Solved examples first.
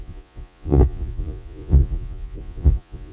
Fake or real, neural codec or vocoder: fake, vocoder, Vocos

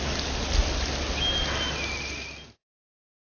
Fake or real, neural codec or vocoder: real